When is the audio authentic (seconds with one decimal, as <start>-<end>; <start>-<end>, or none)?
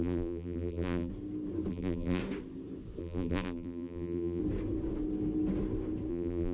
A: 1.1-1.7; 2.2-3.0; 4.4-6.1